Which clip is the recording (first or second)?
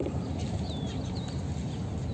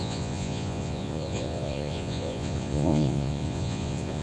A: first